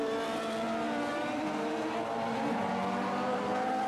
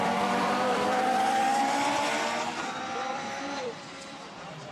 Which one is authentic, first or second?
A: first